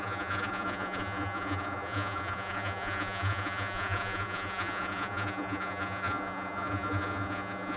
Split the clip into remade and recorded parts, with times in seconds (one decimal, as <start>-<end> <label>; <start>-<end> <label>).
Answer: 0.0-7.8 remade

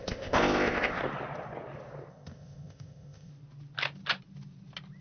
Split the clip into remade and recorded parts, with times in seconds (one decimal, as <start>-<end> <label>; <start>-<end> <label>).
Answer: 0.0-1.0 remade; 1.0-2.1 recorded; 2.1-3.3 remade; 3.3-5.0 recorded